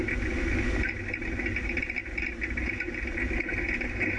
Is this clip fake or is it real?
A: real